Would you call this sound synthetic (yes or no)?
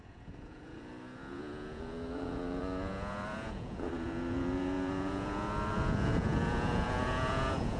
yes